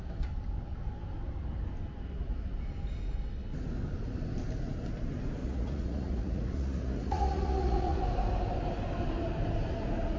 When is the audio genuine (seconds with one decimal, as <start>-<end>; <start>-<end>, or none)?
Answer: 0.0-5.4; 8.0-10.2